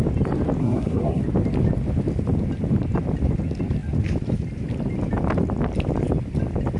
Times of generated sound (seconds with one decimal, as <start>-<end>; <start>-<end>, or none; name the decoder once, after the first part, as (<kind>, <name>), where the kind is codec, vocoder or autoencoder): 0.6-1.2 (codec, SNAC)